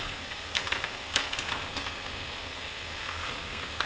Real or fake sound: fake